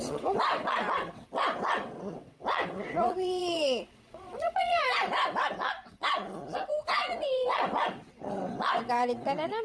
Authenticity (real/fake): fake